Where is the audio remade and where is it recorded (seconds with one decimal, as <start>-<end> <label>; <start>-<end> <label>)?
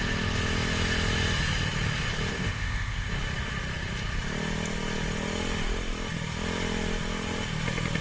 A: 0.0-2.3 recorded; 2.3-3.1 remade; 3.1-8.0 recorded